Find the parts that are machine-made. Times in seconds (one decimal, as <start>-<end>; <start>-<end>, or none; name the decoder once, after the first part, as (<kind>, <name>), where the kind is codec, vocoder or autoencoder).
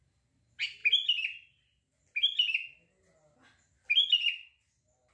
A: none